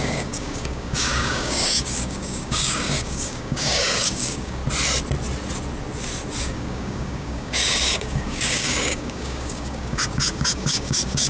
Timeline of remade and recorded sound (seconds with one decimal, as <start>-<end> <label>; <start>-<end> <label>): 0.0-4.6 remade; 4.6-6.4 recorded; 6.4-11.3 remade